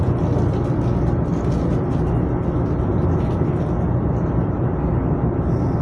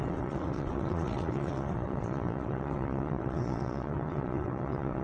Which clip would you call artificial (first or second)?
second